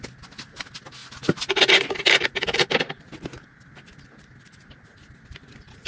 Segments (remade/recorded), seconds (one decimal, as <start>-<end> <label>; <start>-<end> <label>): 0.0-5.9 recorded